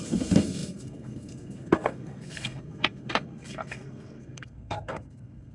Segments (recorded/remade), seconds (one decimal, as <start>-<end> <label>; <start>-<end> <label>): 0.0-5.5 remade